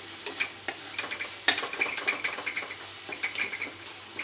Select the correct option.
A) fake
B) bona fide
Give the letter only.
B